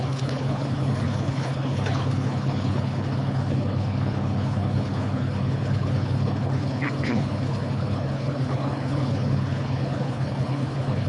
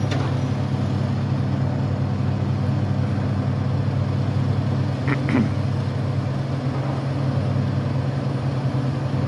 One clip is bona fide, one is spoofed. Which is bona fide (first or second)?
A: second